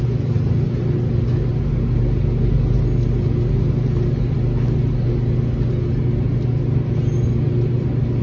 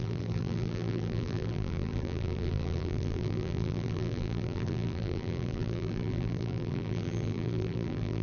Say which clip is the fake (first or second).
second